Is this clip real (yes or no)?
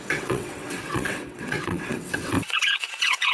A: no